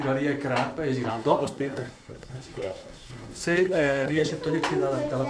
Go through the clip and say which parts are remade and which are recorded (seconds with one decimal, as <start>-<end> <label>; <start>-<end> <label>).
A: 0.0-1.1 recorded; 1.1-4.3 remade; 4.3-5.3 recorded